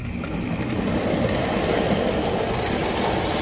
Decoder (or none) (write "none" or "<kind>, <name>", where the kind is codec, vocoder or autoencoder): none